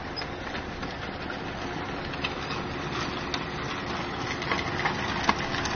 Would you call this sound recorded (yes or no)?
yes